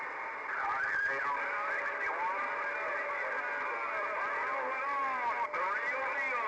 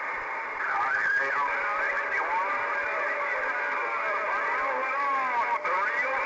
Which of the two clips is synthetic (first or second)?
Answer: second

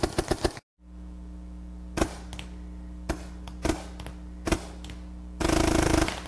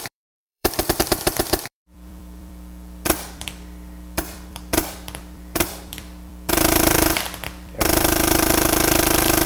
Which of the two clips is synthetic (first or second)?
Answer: second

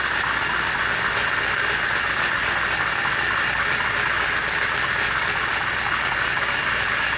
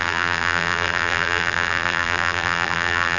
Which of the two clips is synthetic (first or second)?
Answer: second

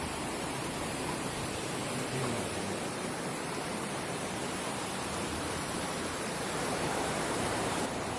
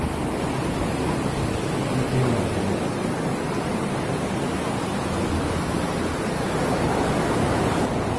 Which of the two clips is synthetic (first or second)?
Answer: first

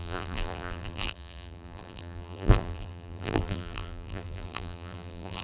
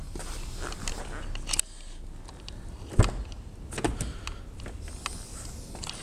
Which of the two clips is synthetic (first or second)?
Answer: first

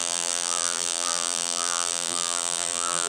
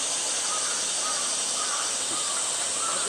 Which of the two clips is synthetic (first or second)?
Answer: first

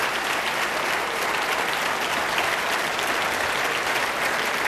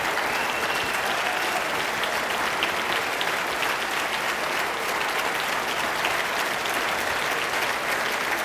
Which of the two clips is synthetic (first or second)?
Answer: first